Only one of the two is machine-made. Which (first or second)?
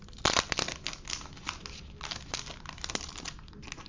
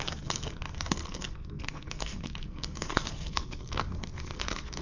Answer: second